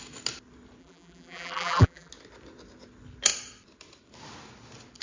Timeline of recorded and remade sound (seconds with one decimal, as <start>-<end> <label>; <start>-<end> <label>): 0.0-0.8 recorded; 0.8-2.1 remade; 2.1-5.0 recorded